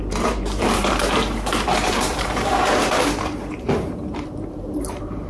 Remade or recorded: remade